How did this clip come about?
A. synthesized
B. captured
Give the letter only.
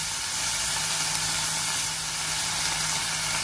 B